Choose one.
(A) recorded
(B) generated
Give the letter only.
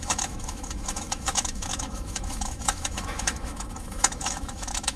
B